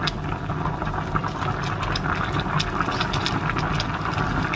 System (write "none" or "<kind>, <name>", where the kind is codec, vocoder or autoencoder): none